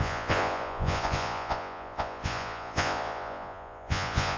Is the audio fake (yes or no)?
yes